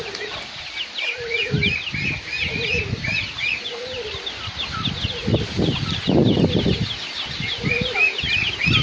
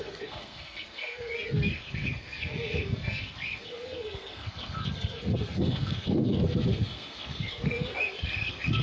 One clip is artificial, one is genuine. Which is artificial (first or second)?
second